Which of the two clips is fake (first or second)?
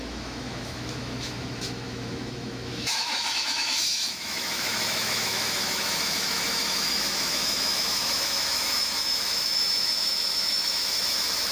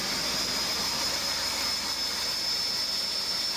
first